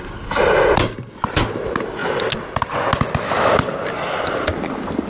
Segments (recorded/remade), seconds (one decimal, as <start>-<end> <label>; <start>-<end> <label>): 0.0-5.1 recorded